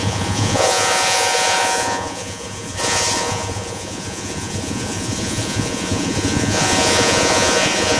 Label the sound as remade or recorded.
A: remade